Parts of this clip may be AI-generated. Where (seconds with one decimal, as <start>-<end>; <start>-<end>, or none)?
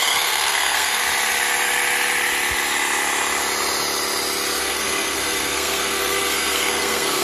0.0-1.0; 4.6-7.2